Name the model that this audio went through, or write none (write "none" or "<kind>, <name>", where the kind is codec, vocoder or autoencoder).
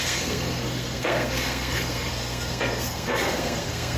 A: codec, SNAC